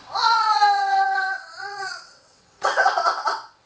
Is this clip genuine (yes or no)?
no